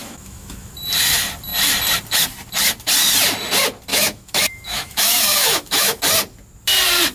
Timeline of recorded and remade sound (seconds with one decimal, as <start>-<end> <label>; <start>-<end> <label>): 0.0-0.7 remade; 0.7-3.9 recorded; 3.9-6.0 remade; 6.0-7.1 recorded